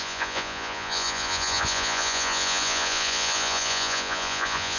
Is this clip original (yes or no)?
no